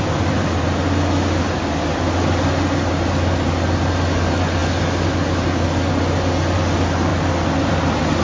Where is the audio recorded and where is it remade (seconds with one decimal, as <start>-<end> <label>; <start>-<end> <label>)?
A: 0.0-8.2 recorded